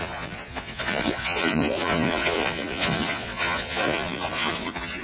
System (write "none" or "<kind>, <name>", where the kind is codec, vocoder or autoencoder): vocoder, Vocos